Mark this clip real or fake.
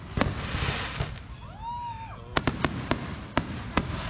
real